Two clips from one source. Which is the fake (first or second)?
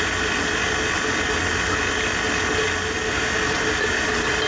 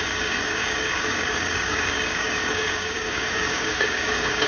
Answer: second